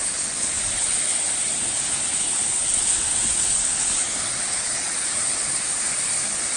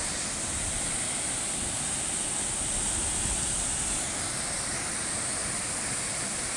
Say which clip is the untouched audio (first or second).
second